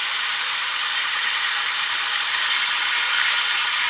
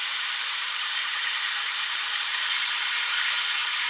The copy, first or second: second